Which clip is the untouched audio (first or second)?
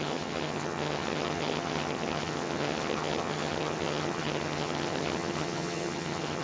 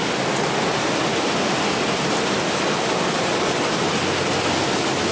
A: second